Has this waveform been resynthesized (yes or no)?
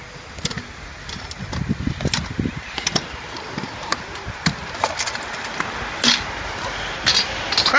no